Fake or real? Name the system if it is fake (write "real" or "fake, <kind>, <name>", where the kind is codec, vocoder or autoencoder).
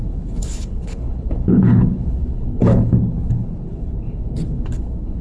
fake, codec, HILCodec